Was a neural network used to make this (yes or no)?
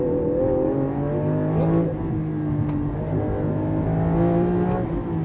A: no